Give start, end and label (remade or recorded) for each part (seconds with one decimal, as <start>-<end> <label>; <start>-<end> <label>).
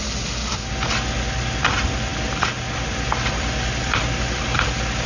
0.0-5.1 recorded